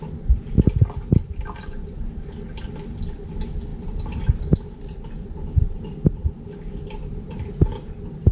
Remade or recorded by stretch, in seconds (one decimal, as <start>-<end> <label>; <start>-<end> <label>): 0.0-8.3 recorded